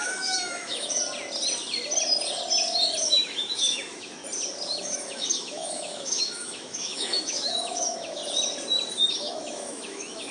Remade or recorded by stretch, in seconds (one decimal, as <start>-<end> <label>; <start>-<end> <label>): 0.0-1.0 remade; 1.0-3.0 recorded; 3.0-4.2 remade; 4.2-4.8 recorded; 4.8-8.2 remade; 8.2-9.1 recorded; 9.1-10.3 remade